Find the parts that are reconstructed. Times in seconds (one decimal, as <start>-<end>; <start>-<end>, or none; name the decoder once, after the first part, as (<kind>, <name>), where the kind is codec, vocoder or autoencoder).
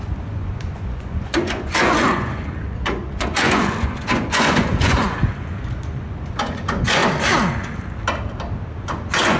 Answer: 0.0-7.0 (vocoder, Vocos); 8.8-9.4